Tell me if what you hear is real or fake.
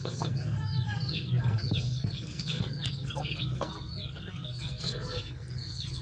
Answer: fake